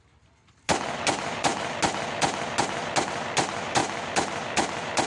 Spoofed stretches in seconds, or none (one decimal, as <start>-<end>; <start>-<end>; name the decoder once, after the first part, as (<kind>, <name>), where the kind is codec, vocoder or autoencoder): none